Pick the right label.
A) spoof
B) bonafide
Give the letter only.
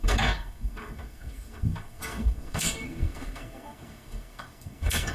A